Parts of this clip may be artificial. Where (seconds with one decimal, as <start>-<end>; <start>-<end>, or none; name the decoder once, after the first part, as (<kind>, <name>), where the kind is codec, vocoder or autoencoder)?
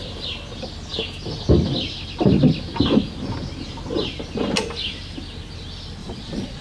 6.0-6.6 (vocoder, Vocos)